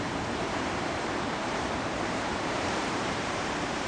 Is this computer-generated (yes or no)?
yes